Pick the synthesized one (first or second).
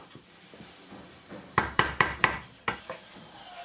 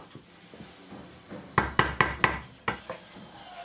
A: first